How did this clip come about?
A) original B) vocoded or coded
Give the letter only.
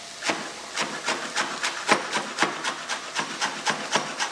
A